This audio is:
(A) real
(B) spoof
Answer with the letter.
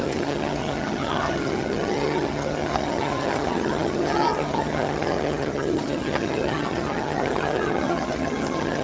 B